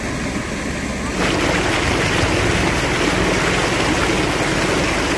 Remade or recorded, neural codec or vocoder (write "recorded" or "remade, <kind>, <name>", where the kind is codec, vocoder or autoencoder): recorded